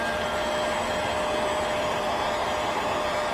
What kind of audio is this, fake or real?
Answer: real